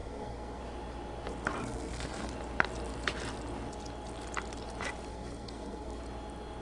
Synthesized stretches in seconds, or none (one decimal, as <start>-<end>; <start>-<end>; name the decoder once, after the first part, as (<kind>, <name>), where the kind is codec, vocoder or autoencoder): 0.0-0.6 (codec, SNAC); 1.6-2.3; 5.1-6.0